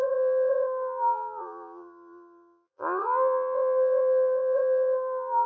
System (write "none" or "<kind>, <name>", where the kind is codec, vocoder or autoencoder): vocoder, Vocos